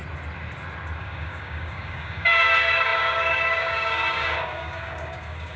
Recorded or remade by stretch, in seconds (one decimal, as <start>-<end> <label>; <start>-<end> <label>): 0.0-1.0 recorded; 1.0-5.6 remade